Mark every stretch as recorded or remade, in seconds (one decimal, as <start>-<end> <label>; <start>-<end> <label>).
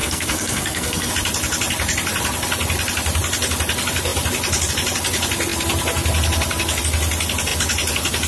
0.0-1.1 remade; 1.1-8.3 recorded